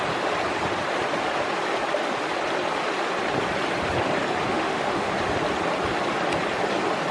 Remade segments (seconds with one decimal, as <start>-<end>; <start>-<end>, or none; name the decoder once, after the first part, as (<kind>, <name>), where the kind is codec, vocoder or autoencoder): 4.5-5.1 (autoencoder, DAC-VAE)

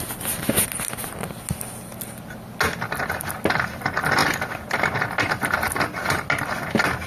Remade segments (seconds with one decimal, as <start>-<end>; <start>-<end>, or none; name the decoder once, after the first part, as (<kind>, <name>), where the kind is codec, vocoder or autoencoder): none

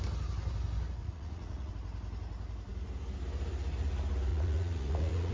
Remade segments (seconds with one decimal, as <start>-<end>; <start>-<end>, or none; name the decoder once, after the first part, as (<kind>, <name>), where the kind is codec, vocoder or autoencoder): 1.0-1.7 (vocoder, Vocos); 4.3-5.3

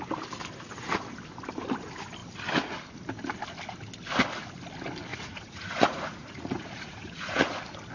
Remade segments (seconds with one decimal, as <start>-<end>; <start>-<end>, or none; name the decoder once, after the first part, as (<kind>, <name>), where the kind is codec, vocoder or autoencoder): 5.1-7.5 (vocoder, Vocos)

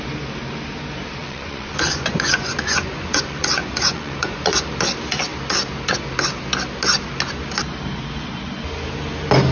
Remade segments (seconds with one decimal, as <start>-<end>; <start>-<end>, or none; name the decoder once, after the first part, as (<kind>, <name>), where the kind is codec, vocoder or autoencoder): 1.2-4.6 (vocoder, Vocos)

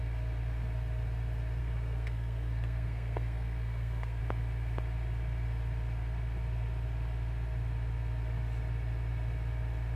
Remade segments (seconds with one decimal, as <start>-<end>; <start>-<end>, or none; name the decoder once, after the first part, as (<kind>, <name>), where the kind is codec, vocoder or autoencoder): 1.6-4.2 (codec, SNAC)